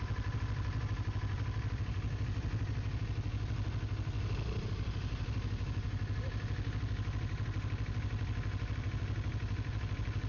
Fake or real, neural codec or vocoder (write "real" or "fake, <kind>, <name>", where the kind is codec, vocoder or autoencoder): real